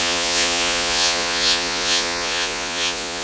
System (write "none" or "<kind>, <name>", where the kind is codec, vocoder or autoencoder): vocoder, Vocos